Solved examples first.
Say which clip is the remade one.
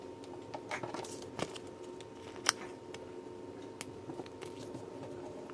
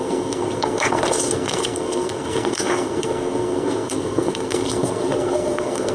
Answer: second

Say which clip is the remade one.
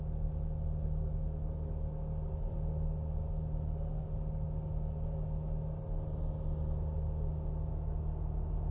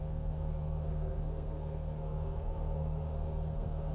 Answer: second